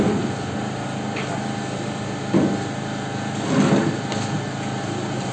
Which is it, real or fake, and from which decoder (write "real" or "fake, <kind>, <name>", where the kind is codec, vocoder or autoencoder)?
real